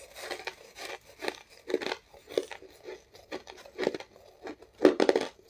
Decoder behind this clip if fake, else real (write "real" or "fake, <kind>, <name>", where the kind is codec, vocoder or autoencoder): real